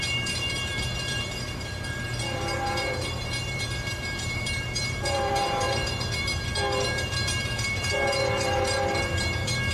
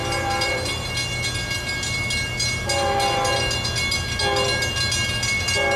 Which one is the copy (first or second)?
first